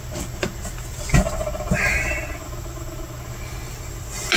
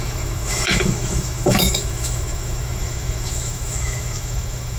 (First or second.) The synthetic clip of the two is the second